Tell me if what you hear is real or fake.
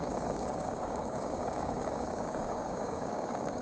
fake